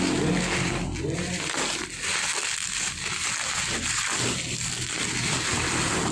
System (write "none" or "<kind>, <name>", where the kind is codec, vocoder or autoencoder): none